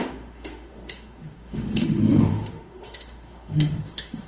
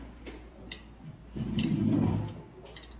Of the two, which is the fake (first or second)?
first